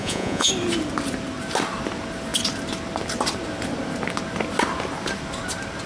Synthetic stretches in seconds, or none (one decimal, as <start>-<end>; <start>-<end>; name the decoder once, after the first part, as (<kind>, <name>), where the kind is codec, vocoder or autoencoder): 0.0-0.5 (vocoder, Vocos)